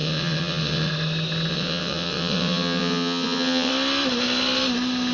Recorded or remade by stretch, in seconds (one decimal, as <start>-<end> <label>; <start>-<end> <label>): 0.0-0.9 remade; 0.9-1.5 recorded; 1.5-3.7 remade; 3.7-5.1 recorded